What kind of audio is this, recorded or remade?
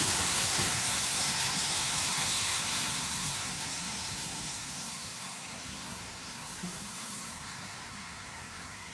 remade